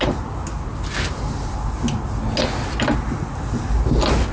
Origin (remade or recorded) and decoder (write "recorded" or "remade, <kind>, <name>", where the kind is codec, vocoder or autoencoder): recorded